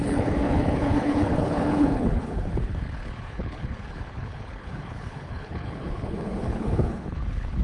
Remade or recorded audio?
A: remade